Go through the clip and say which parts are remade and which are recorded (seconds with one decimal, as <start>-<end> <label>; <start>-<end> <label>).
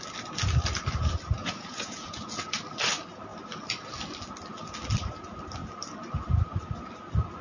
0.0-1.4 recorded; 1.4-2.5 remade; 2.5-7.4 recorded